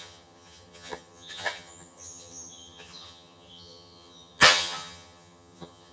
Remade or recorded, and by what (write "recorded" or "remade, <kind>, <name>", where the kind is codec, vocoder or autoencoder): remade, vocoder, HiFi-GAN